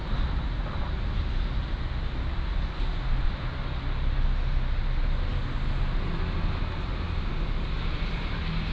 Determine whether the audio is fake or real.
real